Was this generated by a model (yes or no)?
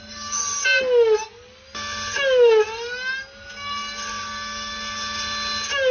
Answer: no